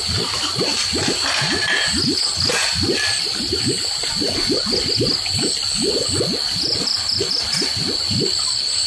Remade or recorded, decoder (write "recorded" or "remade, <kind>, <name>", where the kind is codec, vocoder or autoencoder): recorded